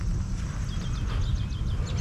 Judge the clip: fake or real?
real